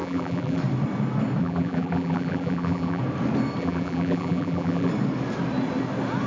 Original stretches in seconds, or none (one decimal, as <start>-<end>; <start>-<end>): 0.6-1.4; 3.0-3.6; 4.9-6.3